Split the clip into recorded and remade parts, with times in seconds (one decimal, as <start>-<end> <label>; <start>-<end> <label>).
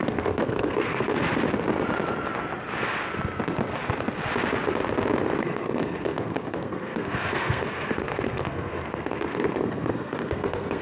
0.0-1.1 remade; 1.1-5.4 recorded; 5.4-10.8 remade